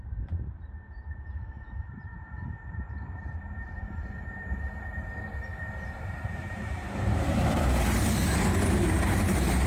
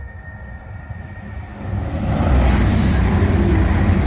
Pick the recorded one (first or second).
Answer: second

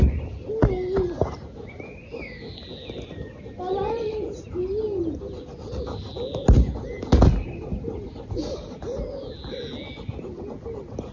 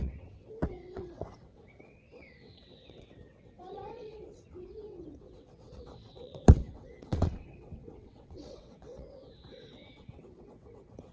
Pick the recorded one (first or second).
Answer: first